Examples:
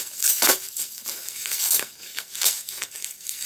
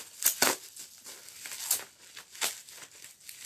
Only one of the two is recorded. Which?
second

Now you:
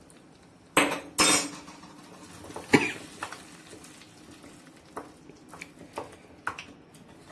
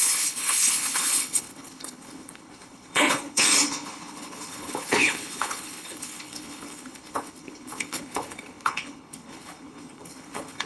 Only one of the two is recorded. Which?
first